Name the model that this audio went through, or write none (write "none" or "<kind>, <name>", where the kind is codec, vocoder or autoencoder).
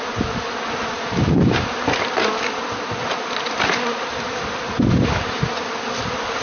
none